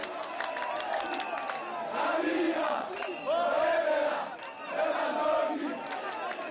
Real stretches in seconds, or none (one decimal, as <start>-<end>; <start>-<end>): 0.0-2.5; 3.1-6.5